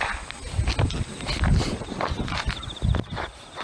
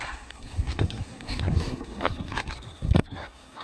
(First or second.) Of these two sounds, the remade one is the second